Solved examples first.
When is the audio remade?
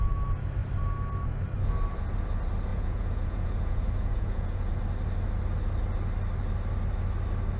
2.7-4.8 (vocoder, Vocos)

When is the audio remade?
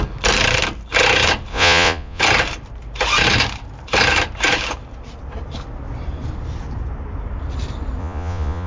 1.5-2.2 (vocoder, Vocos); 8.0-8.7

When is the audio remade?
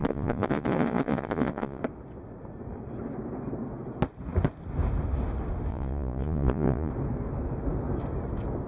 0.0-1.8 (vocoder, Vocos); 5.7-6.9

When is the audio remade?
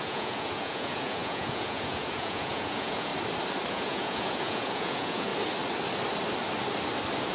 0.0-3.1 (vocoder, Vocos); 3.7-5.3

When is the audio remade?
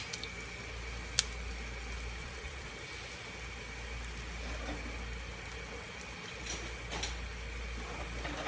2.2-2.7 (vocoder, Vocos)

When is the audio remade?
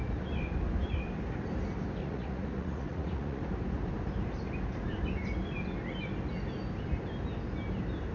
2.0-3.4 (vocoder, Vocos)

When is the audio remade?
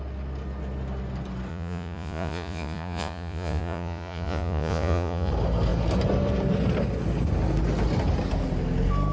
1.5-5.3 (vocoder, Vocos)